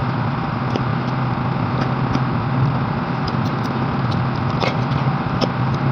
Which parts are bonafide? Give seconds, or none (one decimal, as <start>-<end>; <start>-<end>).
0.9-2.6